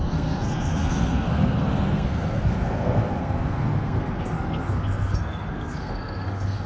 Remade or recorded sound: remade